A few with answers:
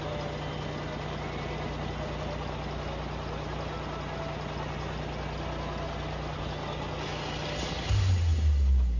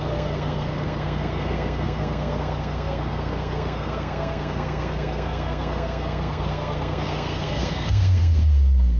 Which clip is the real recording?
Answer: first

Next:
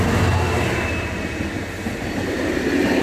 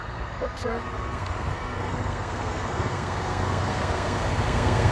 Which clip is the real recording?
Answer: first